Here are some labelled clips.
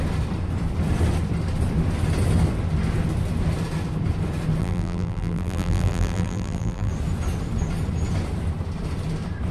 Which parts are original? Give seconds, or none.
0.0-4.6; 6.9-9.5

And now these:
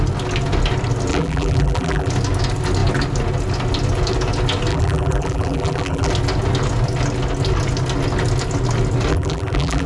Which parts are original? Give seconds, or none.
0.0-1.1; 2.1-4.7; 6.1-9.1

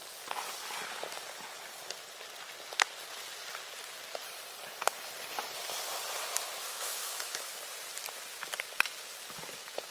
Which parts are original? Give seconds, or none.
0.0-6.7; 7.5-9.9